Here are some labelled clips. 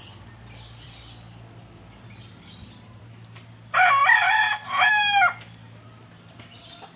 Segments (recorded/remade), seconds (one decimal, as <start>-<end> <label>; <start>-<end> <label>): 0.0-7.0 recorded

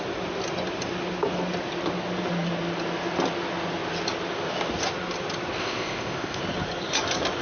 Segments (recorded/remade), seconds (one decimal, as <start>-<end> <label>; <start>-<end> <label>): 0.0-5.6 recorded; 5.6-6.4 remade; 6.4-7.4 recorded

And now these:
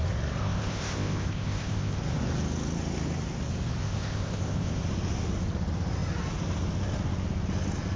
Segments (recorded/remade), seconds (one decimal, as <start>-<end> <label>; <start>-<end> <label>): 0.0-0.4 recorded; 0.4-2.0 remade; 2.0-3.8 recorded; 3.8-4.8 remade; 4.8-8.0 recorded

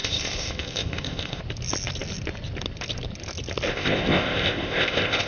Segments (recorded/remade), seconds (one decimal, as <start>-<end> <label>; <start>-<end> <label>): 0.0-1.4 remade; 1.4-3.7 recorded; 3.7-5.3 remade